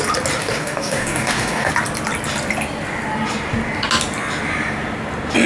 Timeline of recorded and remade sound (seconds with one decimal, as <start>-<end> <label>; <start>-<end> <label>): 0.0-0.4 recorded; 0.4-1.7 remade; 1.7-5.5 recorded